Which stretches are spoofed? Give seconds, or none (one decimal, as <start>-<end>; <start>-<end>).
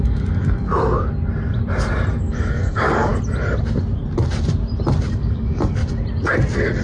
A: 0.0-0.7; 2.2-3.1; 5.1-5.8